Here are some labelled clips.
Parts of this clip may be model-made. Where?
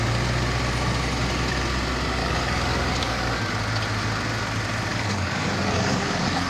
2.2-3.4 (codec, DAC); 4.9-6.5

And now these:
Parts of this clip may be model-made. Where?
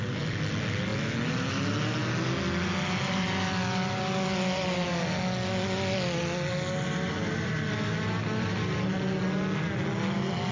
none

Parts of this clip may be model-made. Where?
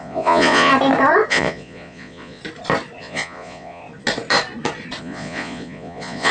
0.0-0.7 (vocoder, Vocos); 1.3-2.4; 3.0-3.8; 5.0-6.3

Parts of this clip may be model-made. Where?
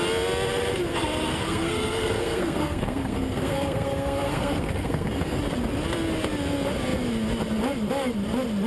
0.9-5.4 (codec, SNAC)